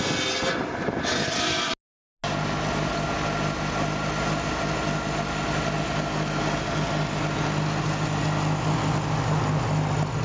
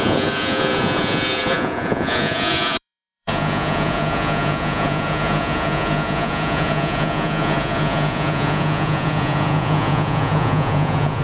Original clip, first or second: first